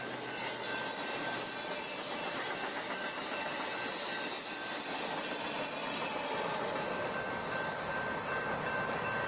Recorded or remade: recorded